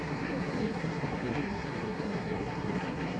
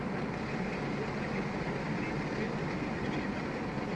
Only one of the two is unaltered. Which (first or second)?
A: second